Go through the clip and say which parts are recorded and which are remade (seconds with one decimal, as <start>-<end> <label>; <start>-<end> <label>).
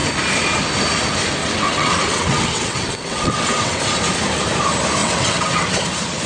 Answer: 0.0-1.4 recorded; 1.4-3.8 remade; 3.8-5.0 recorded; 5.0-5.8 remade; 5.8-6.3 recorded